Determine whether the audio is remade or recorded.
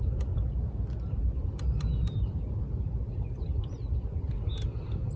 recorded